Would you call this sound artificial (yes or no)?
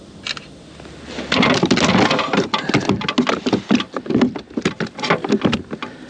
no